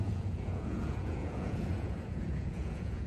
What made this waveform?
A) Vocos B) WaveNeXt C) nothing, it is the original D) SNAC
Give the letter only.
A